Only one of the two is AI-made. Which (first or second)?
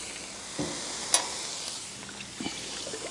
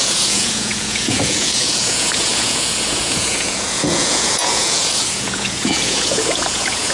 second